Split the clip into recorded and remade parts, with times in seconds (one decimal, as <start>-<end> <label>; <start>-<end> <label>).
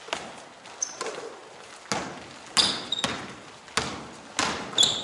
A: 0.0-5.0 recorded